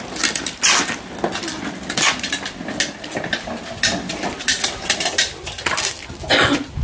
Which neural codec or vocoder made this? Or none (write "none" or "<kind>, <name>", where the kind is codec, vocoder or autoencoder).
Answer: none